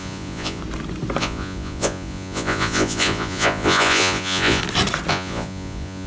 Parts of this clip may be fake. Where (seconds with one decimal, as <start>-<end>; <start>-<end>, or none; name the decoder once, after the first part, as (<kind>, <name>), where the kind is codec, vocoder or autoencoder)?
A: 0.0-0.6 (vocoder, Vocos); 1.2-4.6; 5.1-6.1